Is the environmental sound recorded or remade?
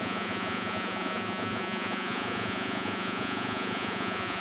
remade